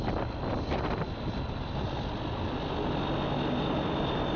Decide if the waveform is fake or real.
real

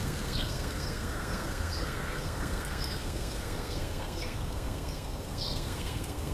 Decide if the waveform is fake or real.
fake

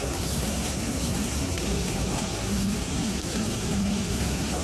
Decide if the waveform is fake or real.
fake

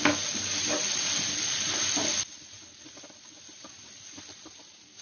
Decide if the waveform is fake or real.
real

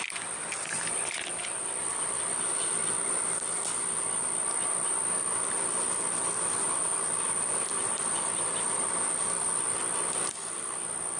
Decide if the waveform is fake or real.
fake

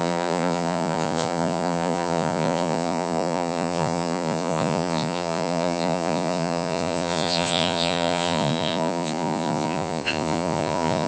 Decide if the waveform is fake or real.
fake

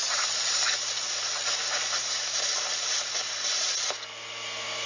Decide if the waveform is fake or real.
real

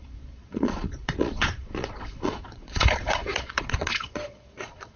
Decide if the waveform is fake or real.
fake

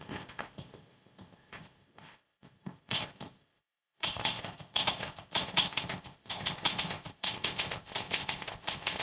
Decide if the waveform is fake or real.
fake